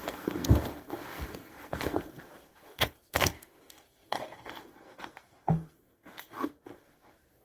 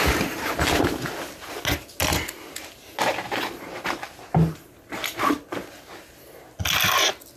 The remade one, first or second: first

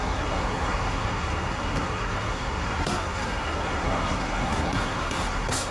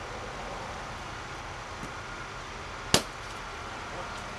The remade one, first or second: first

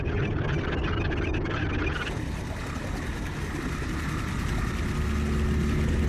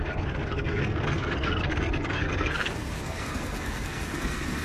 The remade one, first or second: second